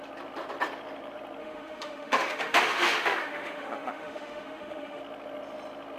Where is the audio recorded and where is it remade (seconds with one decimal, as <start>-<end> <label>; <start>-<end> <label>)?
0.0-1.4 recorded; 1.4-5.0 remade; 5.0-6.0 recorded